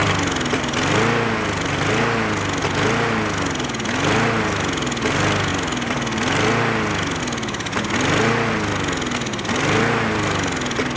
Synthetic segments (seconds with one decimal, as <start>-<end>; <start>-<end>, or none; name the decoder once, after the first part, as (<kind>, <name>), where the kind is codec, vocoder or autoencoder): none